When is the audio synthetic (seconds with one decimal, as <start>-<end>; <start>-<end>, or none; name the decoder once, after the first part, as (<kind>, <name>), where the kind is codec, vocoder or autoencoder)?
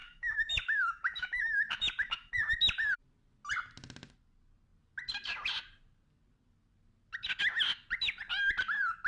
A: 0.0-2.3 (autoencoder, DAC-VAE)